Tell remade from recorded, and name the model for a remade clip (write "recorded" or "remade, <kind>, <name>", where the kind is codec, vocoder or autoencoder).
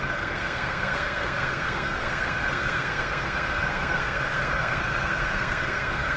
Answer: remade, codec, SNAC